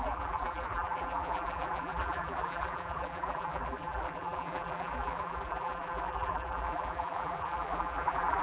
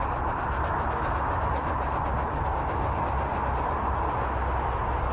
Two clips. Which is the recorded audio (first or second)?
second